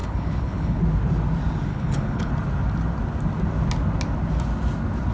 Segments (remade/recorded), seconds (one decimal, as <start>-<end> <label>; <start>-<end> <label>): 0.0-0.8 remade; 0.8-1.7 recorded; 1.7-2.3 remade; 2.3-5.1 recorded